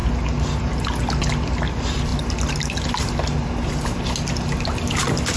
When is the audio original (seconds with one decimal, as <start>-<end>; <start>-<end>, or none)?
0.0-5.4